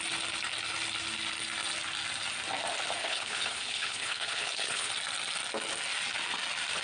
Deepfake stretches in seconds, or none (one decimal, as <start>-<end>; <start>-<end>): 3.0-4.9